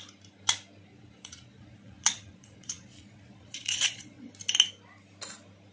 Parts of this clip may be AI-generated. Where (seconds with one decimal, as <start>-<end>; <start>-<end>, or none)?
0.9-4.3